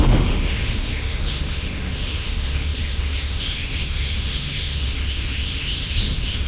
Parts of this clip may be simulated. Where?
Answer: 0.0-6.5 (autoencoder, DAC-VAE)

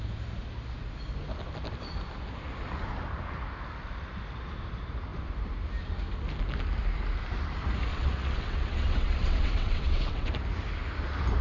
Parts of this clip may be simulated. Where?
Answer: 7.9-10.3 (vocoder, WaveNeXt)

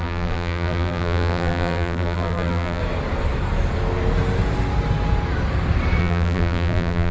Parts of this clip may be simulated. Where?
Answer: 0.0-2.8 (vocoder, BigVGAN v2); 6.0-7.1